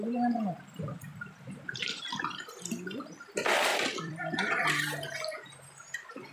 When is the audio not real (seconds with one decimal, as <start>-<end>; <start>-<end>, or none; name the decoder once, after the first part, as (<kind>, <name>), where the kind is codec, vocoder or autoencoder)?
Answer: 1.1-2.6 (vocoder, BigVGAN v2); 3.7-4.2